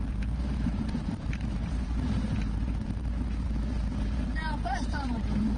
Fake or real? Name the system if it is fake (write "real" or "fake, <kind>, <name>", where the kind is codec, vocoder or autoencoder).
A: fake, vocoder, BigVGAN v2